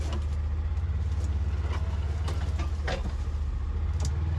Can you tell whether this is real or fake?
real